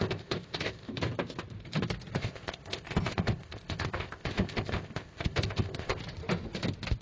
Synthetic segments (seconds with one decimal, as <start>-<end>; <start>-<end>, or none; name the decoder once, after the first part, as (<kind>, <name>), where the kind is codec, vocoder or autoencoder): 0.0-0.9 (codec, ZipCodec); 2.2-6.0